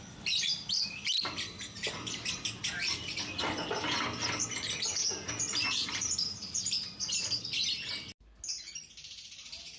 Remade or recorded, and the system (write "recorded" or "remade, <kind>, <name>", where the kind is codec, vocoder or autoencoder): recorded